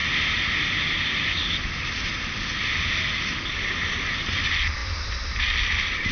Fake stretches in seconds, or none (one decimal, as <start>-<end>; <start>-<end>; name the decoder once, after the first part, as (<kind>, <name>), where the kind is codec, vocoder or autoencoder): none